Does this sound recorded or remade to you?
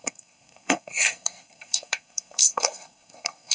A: remade